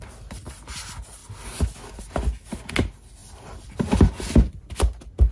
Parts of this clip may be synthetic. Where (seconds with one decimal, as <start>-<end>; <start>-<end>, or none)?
3.2-4.6